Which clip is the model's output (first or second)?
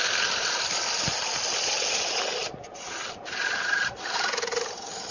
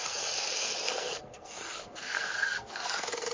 second